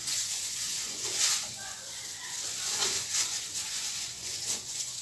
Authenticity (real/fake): fake